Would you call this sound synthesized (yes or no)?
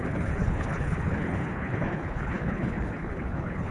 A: yes